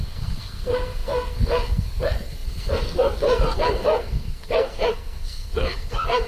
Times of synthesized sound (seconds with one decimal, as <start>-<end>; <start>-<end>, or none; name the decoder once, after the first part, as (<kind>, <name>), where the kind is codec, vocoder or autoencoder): 0.0-6.3 (codec, SNAC)